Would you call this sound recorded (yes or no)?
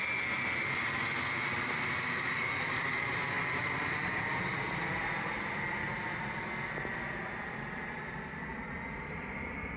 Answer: yes